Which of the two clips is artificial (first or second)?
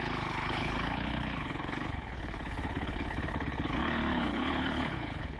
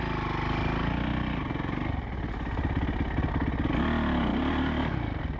first